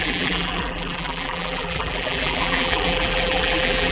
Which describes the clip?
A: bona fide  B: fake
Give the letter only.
B